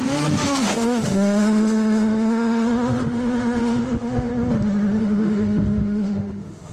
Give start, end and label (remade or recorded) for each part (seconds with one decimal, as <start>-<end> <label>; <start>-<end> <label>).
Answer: 0.0-4.3 remade; 4.3-5.0 recorded; 5.0-6.7 remade